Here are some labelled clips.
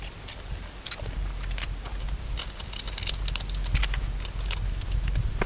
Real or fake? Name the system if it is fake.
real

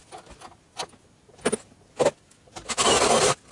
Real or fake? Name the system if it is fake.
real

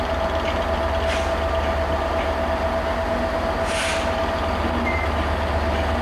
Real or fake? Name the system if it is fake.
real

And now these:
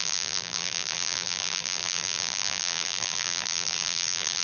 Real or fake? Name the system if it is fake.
fake, vocoder, BigVGAN v2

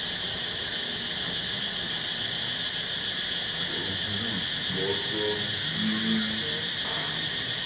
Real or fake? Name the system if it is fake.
real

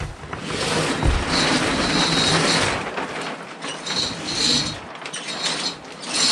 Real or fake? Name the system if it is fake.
real